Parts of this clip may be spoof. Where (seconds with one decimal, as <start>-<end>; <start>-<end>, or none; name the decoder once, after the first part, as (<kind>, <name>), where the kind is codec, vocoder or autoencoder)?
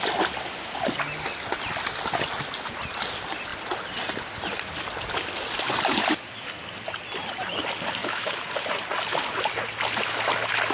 8.0-8.5 (autoencoder, DAC-VAE)